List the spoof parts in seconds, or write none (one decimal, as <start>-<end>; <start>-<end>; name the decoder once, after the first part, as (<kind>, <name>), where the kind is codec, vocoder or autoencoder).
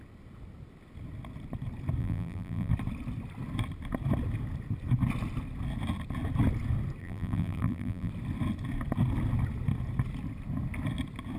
2.0-2.7 (vocoder, BigVGAN v2); 7.0-8.1